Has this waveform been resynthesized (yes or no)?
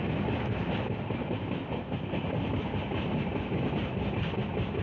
no